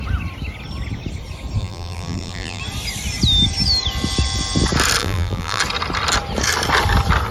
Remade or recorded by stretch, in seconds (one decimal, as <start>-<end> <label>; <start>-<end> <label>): 0.0-1.6 recorded; 1.6-2.6 remade; 2.6-5.0 recorded; 5.0-5.6 remade; 5.6-7.3 recorded